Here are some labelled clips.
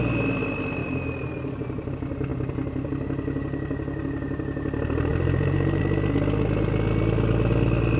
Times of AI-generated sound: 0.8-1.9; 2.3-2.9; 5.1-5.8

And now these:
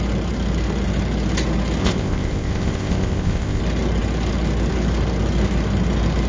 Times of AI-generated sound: 1.8-3.6

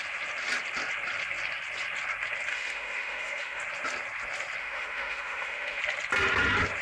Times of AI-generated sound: 2.5-3.6; 4.6-5.8

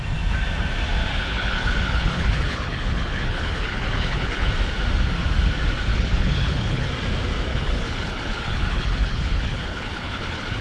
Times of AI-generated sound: 1.1-4.5; 5.9-6.9; 7.5-10.6

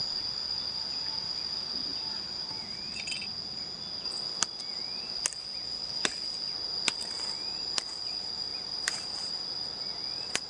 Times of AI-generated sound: 1.9-2.9; 8.5-9.4

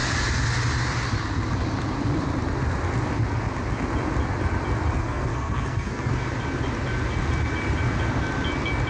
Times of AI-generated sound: 5.0-6.1

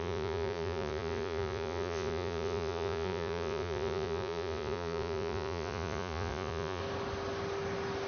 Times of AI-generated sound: 0.0-6.8

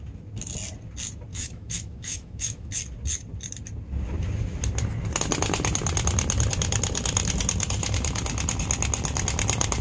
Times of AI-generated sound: 1.3-2.7